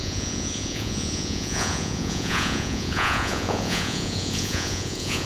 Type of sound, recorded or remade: remade